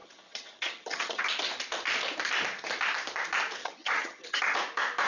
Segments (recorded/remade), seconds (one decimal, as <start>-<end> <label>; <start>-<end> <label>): 0.0-1.2 remade; 1.2-3.6 recorded; 3.6-4.4 remade; 4.4-5.1 recorded